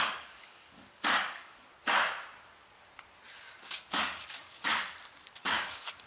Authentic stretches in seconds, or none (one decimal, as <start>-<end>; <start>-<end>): 1.7-3.4; 4.7-5.4